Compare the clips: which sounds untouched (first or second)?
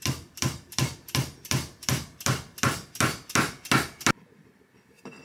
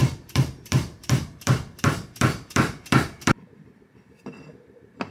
first